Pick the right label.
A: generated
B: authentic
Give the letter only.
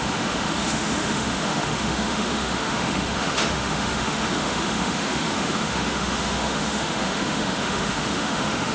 A